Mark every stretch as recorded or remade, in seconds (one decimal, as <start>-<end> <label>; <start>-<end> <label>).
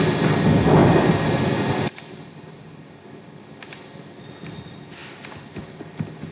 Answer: 0.0-0.8 recorded; 0.8-1.9 remade; 1.9-6.3 recorded